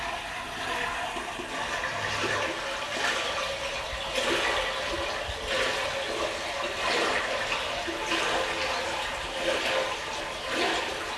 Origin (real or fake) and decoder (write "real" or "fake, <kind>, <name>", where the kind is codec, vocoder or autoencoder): real